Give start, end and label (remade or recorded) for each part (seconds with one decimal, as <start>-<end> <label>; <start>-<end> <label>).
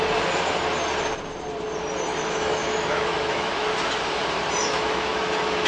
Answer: 0.0-2.1 recorded; 2.1-3.5 remade; 3.5-4.6 recorded; 4.6-5.7 remade